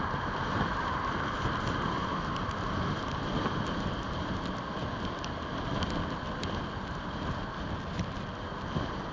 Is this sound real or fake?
real